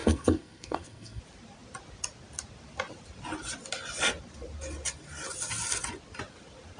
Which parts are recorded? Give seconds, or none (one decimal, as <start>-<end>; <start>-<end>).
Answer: 1.2-6.8